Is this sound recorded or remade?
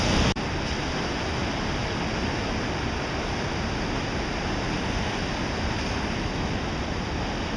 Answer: recorded